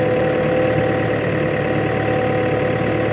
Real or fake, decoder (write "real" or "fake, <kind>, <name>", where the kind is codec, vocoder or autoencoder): real